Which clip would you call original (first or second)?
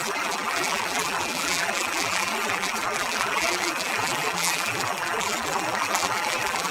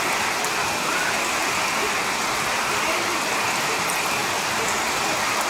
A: second